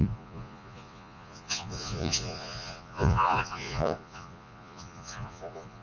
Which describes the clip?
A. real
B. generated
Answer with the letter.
B